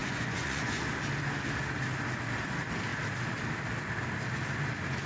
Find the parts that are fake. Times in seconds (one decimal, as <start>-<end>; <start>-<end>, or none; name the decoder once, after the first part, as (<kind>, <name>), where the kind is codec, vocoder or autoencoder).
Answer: 0.0-0.8 (vocoder, Vocos)